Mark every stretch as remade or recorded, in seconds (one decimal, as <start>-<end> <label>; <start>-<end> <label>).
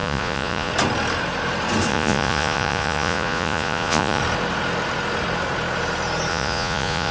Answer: 0.0-0.7 remade; 0.7-1.9 recorded; 1.9-4.2 remade; 4.2-6.3 recorded; 6.3-7.1 remade